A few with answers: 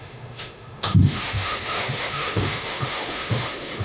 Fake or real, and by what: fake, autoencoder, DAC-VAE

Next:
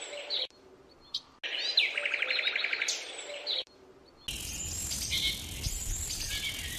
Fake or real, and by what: real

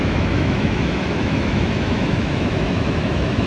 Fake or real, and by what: fake, autoencoder, DAC-VAE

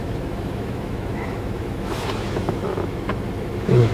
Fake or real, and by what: fake, autoencoder, DAC-VAE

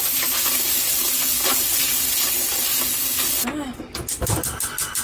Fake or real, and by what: real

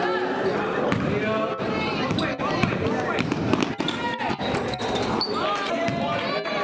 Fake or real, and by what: real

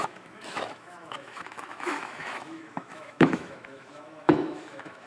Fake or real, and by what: fake, autoencoder, DAC-VAE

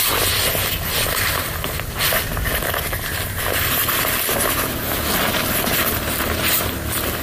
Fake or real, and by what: real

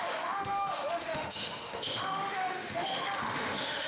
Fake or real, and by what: fake, autoencoder, DAC-VAE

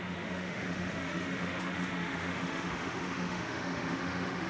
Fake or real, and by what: fake, autoencoder, DAC-VAE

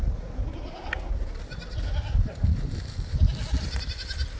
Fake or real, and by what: real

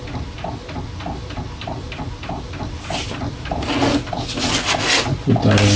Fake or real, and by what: real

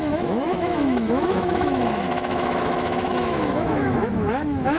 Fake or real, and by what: fake, autoencoder, DAC-VAE